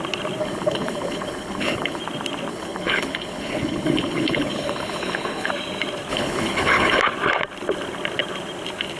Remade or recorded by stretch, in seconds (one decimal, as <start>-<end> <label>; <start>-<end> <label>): 0.0-0.4 recorded; 0.4-2.0 remade; 2.0-2.5 recorded; 2.5-5.5 remade; 5.5-6.1 recorded; 6.1-7.0 remade; 7.0-9.0 recorded